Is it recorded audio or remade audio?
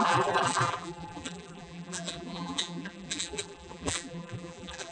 remade